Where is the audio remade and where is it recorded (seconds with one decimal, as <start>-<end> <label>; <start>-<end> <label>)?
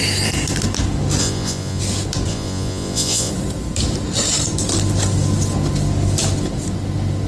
0.0-1.2 recorded; 1.2-1.8 remade; 1.8-2.3 recorded; 2.3-3.3 remade; 3.3-7.3 recorded